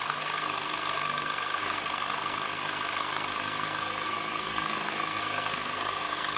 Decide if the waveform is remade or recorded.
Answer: remade